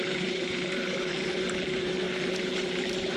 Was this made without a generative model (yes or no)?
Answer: no